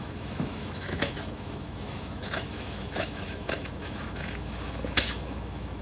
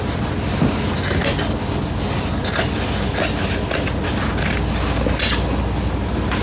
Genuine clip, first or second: second